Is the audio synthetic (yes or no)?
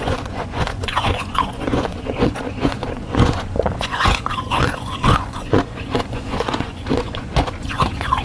yes